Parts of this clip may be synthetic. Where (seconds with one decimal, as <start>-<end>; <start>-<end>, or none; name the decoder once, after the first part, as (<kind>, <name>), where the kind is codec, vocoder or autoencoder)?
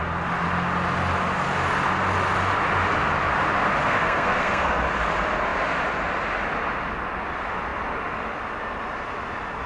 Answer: 3.8-4.8 (codec, SNAC)